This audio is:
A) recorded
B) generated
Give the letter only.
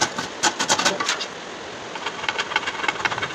A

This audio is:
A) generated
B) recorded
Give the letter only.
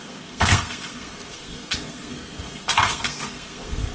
A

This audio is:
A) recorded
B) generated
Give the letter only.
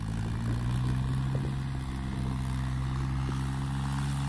A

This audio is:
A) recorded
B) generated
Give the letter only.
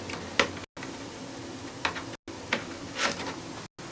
A